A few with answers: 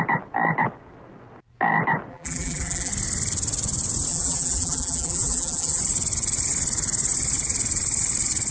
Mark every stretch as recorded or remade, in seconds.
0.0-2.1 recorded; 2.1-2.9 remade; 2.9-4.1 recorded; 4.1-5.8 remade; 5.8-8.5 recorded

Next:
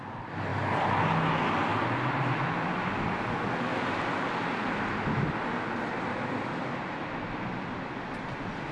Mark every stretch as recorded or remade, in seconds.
0.0-8.7 recorded

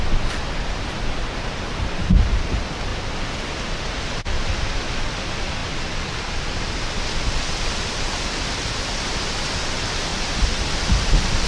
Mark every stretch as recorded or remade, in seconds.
0.0-11.5 recorded

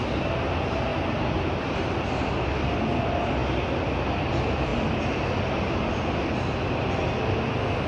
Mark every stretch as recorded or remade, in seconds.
0.0-3.4 remade; 3.4-4.3 recorded; 4.3-4.7 remade; 4.7-6.9 recorded; 6.9-7.9 remade

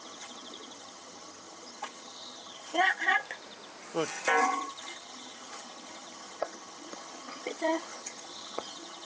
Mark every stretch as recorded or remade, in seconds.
0.0-3.2 remade; 3.2-4.4 recorded; 4.4-9.0 remade